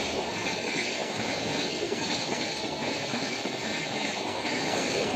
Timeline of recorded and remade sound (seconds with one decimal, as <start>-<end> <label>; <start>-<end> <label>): 0.0-5.2 remade